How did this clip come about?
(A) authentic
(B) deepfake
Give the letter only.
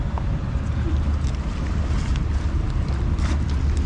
B